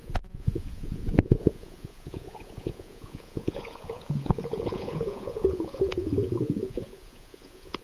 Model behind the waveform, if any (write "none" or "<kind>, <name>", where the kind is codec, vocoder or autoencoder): vocoder, Vocos